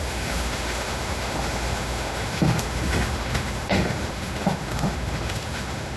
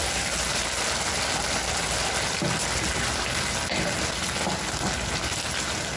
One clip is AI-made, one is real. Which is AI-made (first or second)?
first